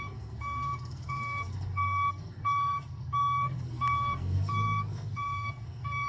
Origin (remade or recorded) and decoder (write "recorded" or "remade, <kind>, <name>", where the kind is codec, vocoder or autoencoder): remade, codec, SNAC